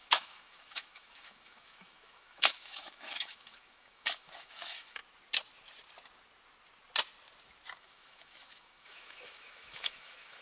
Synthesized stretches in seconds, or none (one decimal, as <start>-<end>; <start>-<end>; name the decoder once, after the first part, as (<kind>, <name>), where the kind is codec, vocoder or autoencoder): 0.0-5.0 (autoencoder, DAC-VAE); 7.8-10.4